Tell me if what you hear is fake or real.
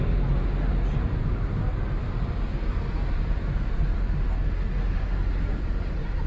real